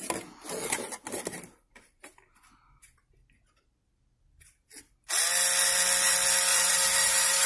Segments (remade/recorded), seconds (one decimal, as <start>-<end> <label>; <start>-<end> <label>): 0.0-6.5 recorded; 6.5-7.5 remade